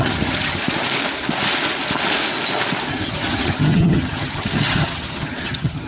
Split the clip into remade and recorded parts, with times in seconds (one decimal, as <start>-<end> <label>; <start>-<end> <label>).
0.0-0.6 remade; 0.6-2.9 recorded; 2.9-5.9 remade

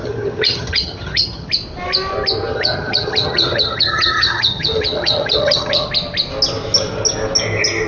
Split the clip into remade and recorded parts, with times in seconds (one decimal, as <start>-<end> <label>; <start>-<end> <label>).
0.0-1.5 remade; 1.5-2.5 recorded; 2.5-5.9 remade; 5.9-7.9 recorded

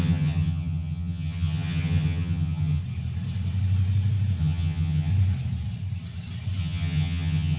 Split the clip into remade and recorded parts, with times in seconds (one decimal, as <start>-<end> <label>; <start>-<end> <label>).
0.0-2.8 remade; 2.8-4.4 recorded; 4.4-5.1 remade; 5.1-6.6 recorded; 6.6-7.6 remade

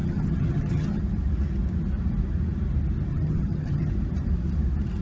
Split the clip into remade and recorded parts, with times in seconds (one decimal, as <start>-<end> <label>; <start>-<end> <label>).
0.0-1.0 remade; 1.0-3.1 recorded; 3.1-3.9 remade; 3.9-5.0 recorded

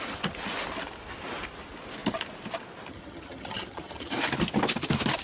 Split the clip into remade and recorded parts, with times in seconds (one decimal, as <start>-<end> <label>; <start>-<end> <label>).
0.0-2.9 recorded; 2.9-4.1 remade; 4.1-5.2 recorded

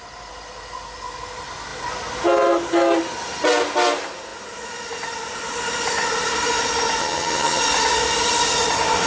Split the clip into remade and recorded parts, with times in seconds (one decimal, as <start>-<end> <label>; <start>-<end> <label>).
0.0-7.0 recorded; 7.0-7.6 remade; 7.6-9.1 recorded

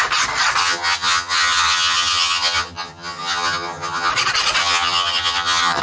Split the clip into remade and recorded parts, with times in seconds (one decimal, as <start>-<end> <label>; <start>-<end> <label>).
0.0-0.6 recorded; 0.6-4.1 remade; 4.1-4.6 recorded; 4.6-5.8 remade

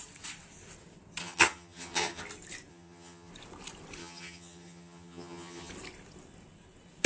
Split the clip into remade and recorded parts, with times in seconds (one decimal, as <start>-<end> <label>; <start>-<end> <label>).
0.0-1.2 recorded; 1.2-2.2 remade; 2.2-2.7 recorded; 2.7-3.3 remade; 3.3-4.0 recorded; 4.0-5.7 remade; 5.7-7.1 recorded